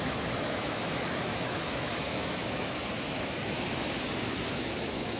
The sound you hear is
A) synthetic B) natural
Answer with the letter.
A